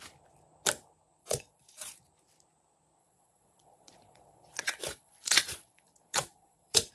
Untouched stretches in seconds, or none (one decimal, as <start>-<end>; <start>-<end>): 0.0-1.2; 2.0-3.0